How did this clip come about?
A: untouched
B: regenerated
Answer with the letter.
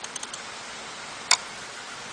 A